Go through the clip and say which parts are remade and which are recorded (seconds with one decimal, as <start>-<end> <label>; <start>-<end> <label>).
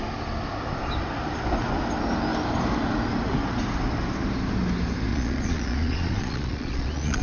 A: 0.0-5.1 recorded; 5.1-7.2 remade